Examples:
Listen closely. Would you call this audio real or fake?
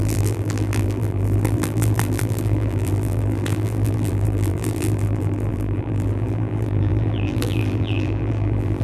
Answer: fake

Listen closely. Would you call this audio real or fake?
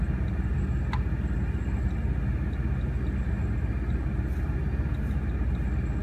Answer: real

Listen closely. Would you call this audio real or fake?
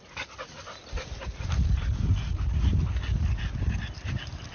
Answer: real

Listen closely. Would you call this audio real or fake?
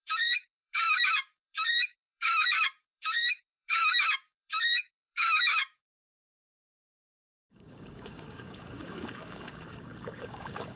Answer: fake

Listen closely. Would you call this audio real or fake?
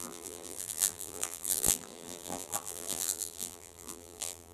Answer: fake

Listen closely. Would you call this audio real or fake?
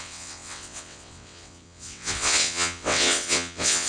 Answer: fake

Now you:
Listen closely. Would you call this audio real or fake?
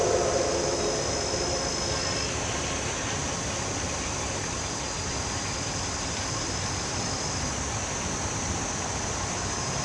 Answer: real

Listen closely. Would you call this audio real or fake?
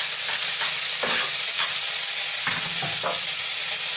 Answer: real